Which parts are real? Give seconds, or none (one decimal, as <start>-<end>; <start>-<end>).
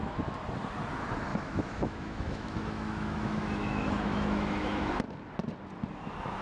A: 0.0-1.3; 4.9-6.4